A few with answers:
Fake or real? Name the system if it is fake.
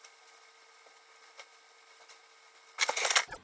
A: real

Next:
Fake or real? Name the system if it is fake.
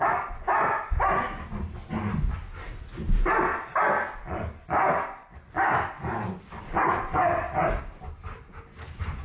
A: real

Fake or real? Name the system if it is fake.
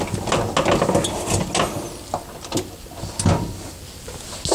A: real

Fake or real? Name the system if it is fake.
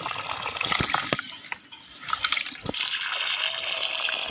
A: real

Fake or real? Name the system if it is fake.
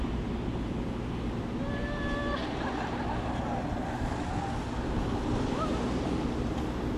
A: real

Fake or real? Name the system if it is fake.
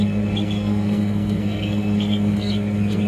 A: fake, codec, SNAC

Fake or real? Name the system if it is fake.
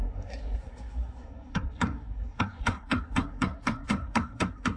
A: fake, codec, SNAC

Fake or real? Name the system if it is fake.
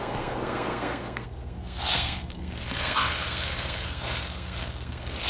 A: fake, codec, SNAC